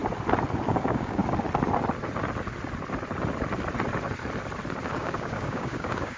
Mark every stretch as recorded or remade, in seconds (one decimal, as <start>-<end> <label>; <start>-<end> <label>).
0.0-0.7 recorded; 0.7-1.2 remade; 1.2-4.9 recorded; 4.9-6.2 remade